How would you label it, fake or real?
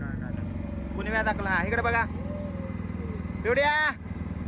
real